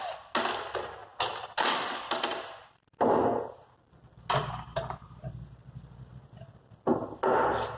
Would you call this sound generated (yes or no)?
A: no